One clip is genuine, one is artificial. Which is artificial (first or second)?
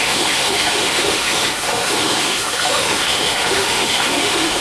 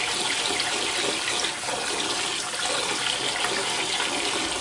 first